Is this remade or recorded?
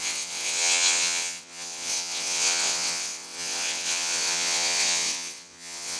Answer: remade